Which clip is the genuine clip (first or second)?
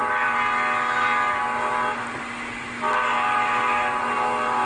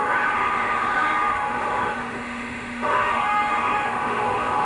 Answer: first